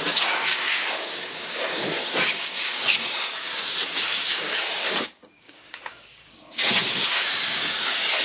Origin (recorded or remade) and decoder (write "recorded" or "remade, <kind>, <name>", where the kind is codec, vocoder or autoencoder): remade, codec, DAC